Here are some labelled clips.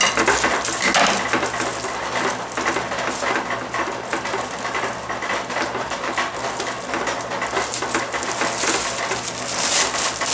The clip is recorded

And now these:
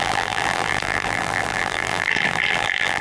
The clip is remade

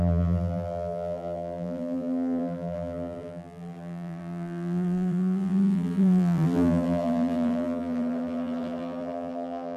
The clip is remade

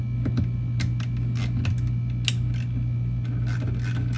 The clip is recorded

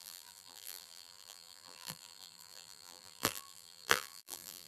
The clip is remade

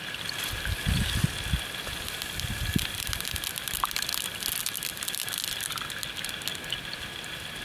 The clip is recorded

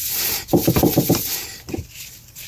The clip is remade